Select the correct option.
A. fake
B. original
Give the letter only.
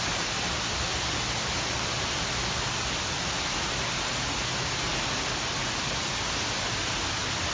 B